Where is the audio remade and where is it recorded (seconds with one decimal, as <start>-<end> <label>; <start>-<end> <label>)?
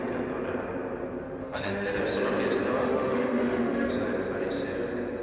0.0-1.4 recorded; 1.4-2.0 remade; 2.0-2.8 recorded; 2.8-3.9 remade; 3.9-5.2 recorded